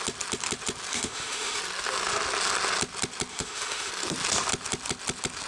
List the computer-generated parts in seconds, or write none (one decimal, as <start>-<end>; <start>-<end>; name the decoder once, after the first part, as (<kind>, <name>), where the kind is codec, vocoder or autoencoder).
0.9-1.6 (autoencoder, DAC-VAE); 3.3-3.9

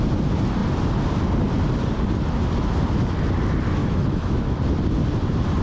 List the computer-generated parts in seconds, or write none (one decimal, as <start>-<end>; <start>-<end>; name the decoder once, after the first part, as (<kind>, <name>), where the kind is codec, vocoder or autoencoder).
3.8-4.6 (autoencoder, DAC-VAE)

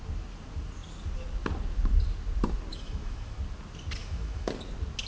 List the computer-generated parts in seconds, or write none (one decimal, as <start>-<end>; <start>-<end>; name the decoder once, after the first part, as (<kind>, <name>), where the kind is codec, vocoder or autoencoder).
2.7-3.4 (autoencoder, DAC-VAE); 4.0-4.5

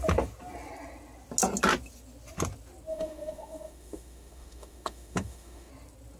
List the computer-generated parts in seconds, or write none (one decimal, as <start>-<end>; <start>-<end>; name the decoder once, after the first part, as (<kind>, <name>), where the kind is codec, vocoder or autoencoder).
2.9-5.7 (autoencoder, DAC-VAE)

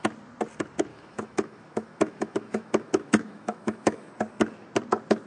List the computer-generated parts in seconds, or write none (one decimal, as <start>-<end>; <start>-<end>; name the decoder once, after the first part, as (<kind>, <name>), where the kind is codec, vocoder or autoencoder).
0.9-4.1 (autoencoder, DAC-VAE)

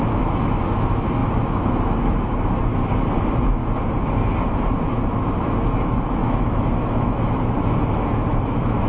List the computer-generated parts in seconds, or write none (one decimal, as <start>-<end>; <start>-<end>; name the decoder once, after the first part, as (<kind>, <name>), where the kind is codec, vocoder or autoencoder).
0.0-3.6 (autoencoder, DAC-VAE); 5.4-8.9

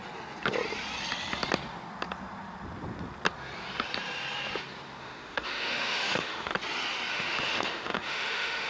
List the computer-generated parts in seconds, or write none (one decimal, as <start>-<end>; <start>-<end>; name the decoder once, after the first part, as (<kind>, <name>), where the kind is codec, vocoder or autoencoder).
5.0-6.5 (autoencoder, DAC-VAE); 7.1-8.7

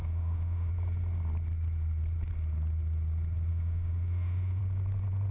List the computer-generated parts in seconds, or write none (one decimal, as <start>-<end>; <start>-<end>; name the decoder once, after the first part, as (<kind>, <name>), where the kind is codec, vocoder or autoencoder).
0.0-0.7 (autoencoder, DAC-VAE); 3.5-4.6